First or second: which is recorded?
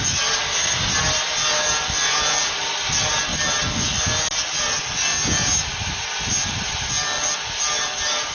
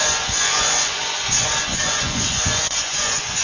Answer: first